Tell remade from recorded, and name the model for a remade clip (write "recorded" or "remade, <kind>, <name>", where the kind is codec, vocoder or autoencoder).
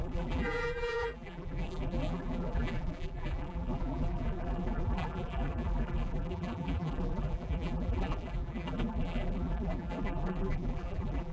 remade, vocoder, BigVGAN v2